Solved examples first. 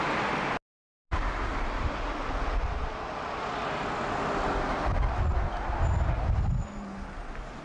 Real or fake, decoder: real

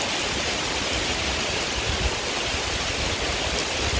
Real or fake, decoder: real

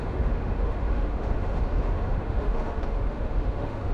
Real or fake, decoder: fake, autoencoder, DAC-VAE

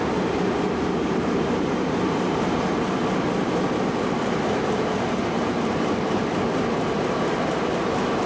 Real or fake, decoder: fake, vocoder, BigVGAN v2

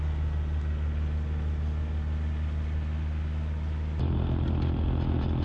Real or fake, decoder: real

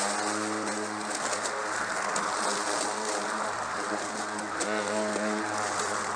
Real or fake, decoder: real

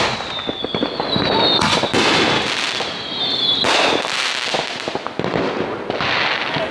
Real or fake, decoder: real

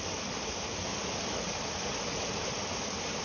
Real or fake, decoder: real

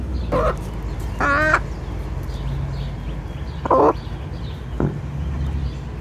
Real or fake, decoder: real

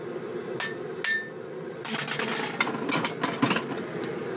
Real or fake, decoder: real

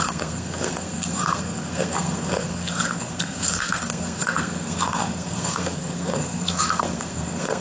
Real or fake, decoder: fake, codec, SNAC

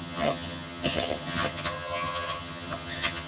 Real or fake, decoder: fake, vocoder, HiFi-GAN